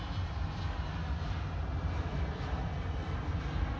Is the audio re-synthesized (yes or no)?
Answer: no